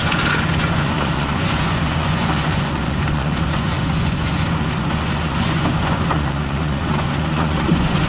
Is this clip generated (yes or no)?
yes